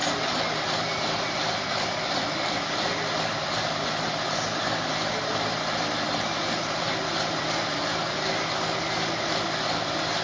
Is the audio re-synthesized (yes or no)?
no